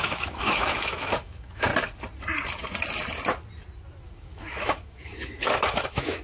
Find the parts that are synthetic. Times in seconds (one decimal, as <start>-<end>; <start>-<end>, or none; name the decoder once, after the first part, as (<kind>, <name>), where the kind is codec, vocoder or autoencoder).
0.0-1.7 (autoencoder, DAC-VAE); 4.0-6.2

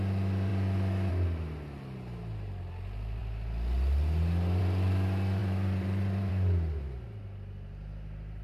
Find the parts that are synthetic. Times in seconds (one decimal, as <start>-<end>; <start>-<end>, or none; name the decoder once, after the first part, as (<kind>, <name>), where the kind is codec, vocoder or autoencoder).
5.4-6.3 (vocoder, BigVGAN v2)

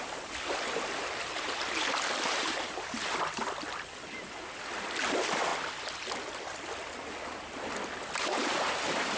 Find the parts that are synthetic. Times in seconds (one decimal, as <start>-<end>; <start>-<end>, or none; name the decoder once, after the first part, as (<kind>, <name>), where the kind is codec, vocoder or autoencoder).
none

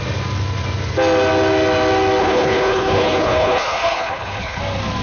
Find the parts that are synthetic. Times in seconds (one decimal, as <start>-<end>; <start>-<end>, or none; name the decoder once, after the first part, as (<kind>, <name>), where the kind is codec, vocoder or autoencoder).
2.2-4.6 (codec, HILCodec)